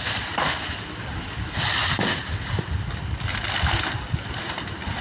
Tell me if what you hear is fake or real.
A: real